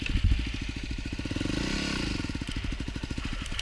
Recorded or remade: recorded